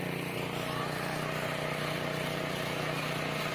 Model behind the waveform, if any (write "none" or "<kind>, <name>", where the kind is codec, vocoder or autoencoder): none